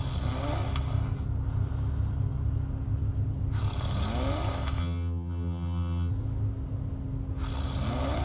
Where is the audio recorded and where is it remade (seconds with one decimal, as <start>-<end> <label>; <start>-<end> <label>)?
0.0-4.8 recorded; 4.8-6.1 remade; 6.1-8.2 recorded